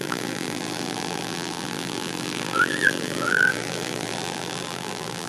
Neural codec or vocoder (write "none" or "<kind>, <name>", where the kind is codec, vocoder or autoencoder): vocoder, BigVGAN v2